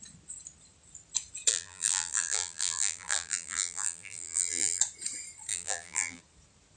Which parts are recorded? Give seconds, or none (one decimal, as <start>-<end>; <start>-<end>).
0.0-1.5; 4.8-5.5; 6.2-6.8